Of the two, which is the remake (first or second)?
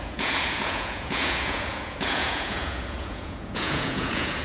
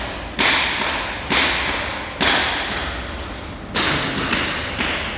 first